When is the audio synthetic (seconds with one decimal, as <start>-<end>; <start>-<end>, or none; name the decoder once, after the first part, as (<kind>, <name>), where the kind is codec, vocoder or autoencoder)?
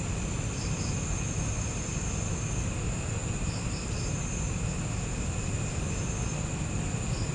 none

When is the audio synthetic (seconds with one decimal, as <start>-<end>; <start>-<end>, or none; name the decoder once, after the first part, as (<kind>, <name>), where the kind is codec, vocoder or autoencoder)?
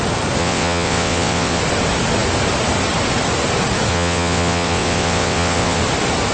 0.4-1.6 (vocoder, WaveNeXt); 3.9-5.8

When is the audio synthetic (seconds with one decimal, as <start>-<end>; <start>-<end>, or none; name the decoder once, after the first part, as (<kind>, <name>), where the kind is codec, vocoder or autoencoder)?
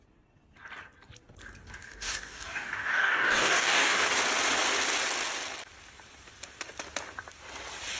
1.8-4.0 (codec, DAC)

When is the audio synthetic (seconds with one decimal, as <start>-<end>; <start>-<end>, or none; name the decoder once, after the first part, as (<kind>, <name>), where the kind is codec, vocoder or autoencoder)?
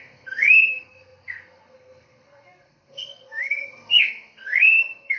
0.0-5.2 (codec, SNAC)